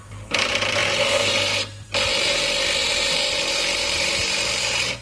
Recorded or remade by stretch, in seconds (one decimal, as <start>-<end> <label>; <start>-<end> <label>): 0.0-0.8 recorded; 0.8-2.4 remade; 2.4-2.8 recorded; 2.8-5.0 remade